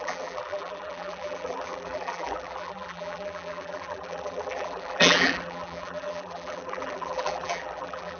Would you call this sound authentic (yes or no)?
no